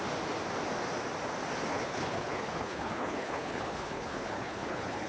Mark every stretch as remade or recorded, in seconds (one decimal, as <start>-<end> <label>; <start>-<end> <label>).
0.0-1.7 recorded; 1.7-5.1 remade